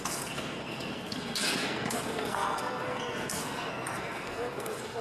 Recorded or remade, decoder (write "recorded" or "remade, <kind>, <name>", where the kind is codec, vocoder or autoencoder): remade, codec, SNAC